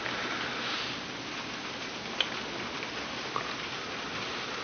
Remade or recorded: recorded